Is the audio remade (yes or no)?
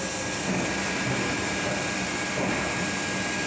no